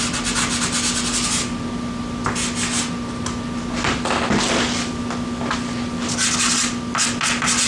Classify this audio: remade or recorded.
recorded